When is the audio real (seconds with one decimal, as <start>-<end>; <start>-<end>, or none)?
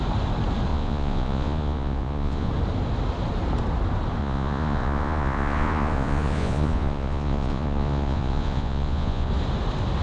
0.0-0.7; 2.5-4.2; 9.3-10.0